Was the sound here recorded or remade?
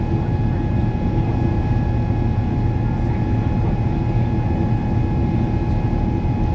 recorded